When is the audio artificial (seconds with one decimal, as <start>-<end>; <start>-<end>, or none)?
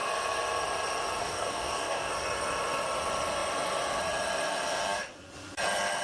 1.2-2.1